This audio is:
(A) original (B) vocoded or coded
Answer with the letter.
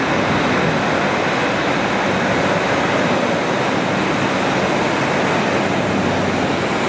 A